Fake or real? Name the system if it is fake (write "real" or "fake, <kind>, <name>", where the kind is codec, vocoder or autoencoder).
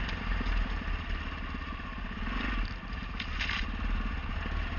real